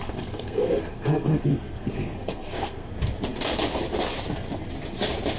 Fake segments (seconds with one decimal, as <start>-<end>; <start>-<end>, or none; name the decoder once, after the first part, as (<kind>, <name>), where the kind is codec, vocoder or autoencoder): 0.0-2.9 (codec, SNAC)